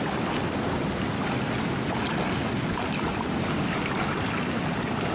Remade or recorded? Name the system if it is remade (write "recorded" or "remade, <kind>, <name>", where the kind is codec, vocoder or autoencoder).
recorded